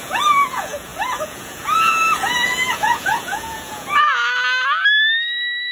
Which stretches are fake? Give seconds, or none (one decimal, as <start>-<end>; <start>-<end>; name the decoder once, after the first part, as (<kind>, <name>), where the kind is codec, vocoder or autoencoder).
0.0-4.2 (vocoder, Vocos)